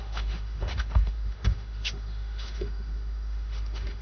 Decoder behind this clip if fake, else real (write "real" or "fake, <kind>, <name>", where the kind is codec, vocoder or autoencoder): fake, autoencoder, DAC-VAE